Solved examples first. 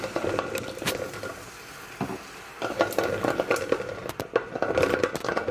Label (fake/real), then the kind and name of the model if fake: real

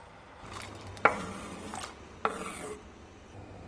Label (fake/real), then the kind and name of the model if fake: real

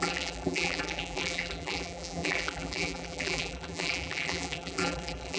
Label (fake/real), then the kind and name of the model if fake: fake, vocoder, BigVGAN v2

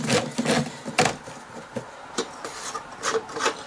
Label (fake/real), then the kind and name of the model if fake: real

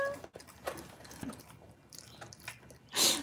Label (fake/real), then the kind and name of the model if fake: real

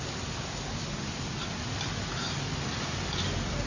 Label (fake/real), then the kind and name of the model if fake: real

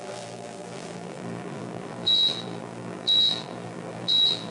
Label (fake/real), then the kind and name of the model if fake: fake, vocoder, BigVGAN v2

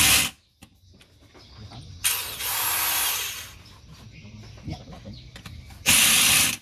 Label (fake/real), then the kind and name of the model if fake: real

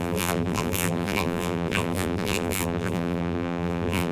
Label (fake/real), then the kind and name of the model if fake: fake, vocoder, BigVGAN v2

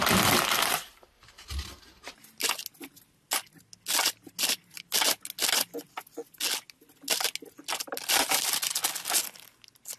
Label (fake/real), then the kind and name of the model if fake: real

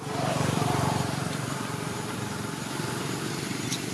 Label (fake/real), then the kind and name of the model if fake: fake, vocoder, BigVGAN v2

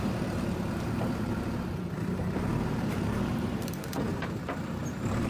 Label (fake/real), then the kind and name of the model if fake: fake, vocoder, BigVGAN v2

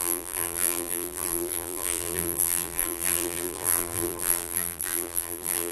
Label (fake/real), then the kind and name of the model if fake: fake, vocoder, BigVGAN v2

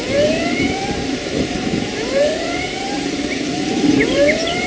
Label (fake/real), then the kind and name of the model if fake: fake, vocoder, BigVGAN v2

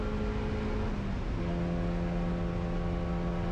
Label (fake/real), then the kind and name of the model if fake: real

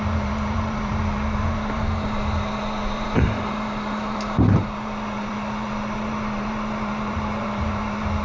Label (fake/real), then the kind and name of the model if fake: fake, vocoder, BigVGAN v2